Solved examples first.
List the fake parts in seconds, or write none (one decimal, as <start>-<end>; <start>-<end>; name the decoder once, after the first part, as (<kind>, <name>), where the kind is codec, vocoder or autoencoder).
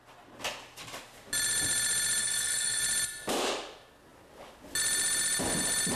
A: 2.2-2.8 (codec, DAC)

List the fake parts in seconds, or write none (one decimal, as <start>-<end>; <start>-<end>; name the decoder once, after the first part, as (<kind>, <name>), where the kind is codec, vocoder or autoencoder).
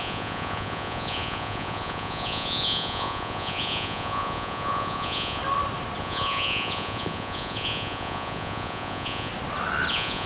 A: 0.0-5.4 (vocoder, Vocos); 6.0-9.3; 9.9-10.3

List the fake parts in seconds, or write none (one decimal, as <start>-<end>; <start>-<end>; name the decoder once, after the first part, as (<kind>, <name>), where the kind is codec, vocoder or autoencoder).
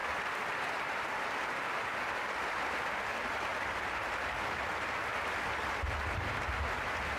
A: none